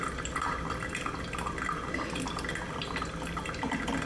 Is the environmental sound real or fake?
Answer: real